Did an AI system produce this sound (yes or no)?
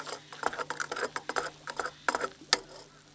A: no